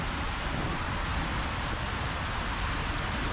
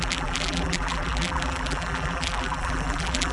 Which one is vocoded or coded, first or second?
second